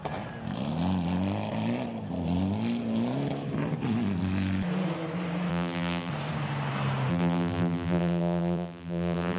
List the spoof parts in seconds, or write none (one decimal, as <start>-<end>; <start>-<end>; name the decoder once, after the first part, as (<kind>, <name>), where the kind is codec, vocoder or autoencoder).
5.5-6.1 (vocoder, BigVGAN v2); 7.1-9.4

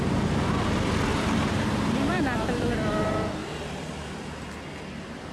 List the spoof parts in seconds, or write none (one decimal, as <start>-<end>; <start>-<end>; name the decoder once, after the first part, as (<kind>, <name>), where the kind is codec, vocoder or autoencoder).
1.1-2.7 (vocoder, BigVGAN v2); 3.4-4.0

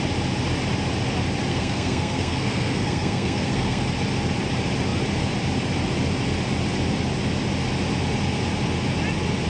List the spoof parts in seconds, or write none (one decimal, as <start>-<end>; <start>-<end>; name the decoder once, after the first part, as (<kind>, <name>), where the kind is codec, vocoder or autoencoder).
1.5-3.8 (codec, SNAC)

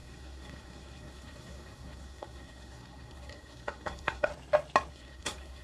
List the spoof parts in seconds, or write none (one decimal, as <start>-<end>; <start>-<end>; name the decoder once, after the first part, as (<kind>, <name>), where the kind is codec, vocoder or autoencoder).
0.0-4.3 (codec, SNAC); 4.9-5.6

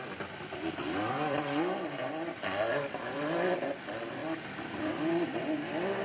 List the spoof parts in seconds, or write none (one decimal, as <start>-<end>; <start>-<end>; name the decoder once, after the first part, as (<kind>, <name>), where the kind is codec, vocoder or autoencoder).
0.0-6.0 (vocoder, BigVGAN v2)

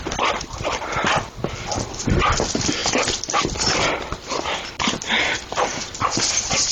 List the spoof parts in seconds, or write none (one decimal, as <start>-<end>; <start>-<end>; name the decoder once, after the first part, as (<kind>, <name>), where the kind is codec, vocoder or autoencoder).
5.7-6.7 (vocoder, BigVGAN v2)

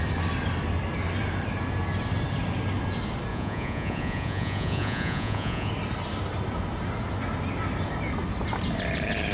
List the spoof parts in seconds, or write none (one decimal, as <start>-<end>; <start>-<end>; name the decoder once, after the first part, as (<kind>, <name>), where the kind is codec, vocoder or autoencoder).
3.3-5.7 (vocoder, Vocos)

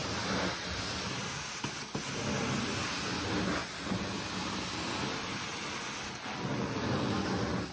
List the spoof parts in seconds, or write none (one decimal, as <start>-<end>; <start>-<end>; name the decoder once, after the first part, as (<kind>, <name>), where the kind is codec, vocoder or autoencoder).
3.6-4.9 (vocoder, BigVGAN v2)